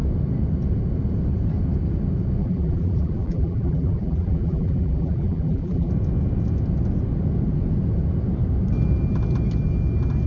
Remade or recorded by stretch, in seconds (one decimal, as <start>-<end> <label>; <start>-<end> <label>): 0.0-2.4 recorded; 2.4-5.9 remade; 5.9-10.3 recorded